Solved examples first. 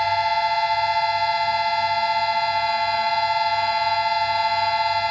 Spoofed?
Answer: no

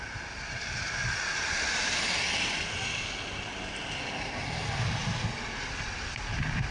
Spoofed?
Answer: no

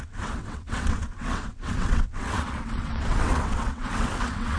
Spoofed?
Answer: yes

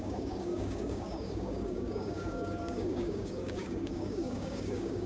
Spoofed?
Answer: yes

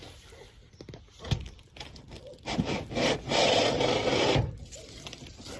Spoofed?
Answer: no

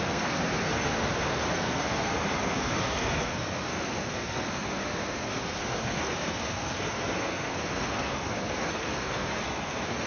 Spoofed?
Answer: yes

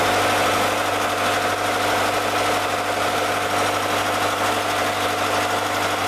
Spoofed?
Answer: no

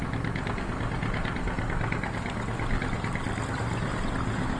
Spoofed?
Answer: no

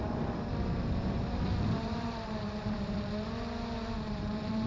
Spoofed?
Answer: yes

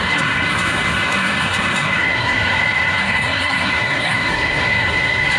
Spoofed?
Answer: yes